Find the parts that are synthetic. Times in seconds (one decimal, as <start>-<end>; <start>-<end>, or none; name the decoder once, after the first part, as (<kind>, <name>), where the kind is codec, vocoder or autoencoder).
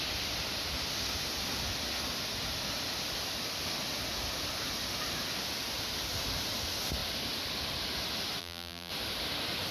8.4-8.9 (vocoder, BigVGAN v2)